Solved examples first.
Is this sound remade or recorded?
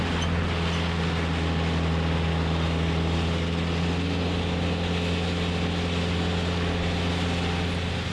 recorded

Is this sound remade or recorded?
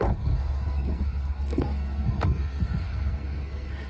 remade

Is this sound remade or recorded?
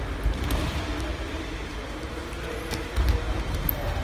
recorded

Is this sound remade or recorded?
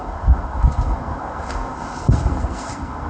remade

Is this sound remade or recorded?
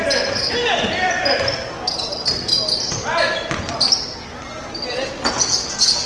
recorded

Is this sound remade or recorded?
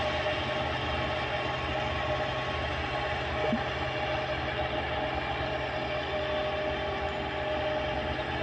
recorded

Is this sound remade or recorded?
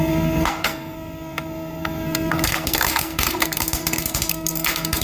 remade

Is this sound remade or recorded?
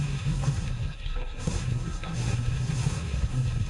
remade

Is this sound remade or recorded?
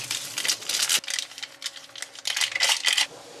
recorded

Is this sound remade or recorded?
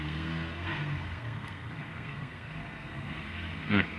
remade